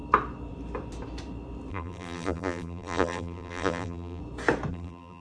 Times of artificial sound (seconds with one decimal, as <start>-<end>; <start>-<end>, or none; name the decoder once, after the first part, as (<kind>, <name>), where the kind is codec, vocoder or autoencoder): 1.7-4.2 (vocoder, BigVGAN v2); 4.7-5.2